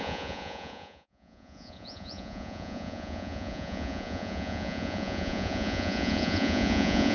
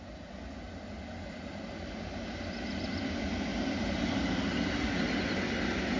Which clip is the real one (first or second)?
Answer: second